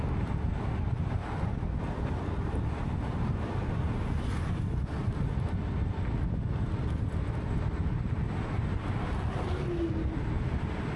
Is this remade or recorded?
recorded